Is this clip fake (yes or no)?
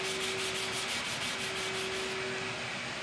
no